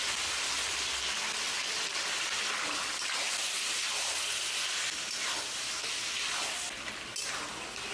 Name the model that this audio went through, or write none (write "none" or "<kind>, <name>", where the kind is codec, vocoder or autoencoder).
none